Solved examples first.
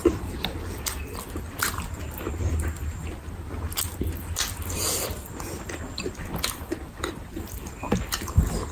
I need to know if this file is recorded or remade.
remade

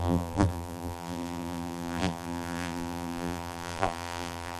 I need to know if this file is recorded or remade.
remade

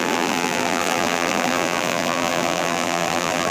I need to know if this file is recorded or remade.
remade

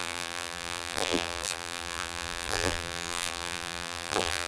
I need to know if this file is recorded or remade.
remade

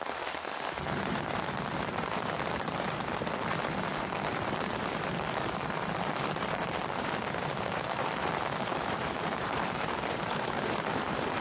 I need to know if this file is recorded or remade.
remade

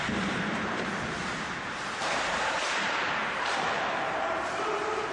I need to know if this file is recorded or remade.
remade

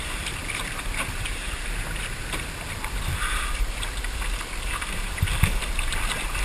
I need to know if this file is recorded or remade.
remade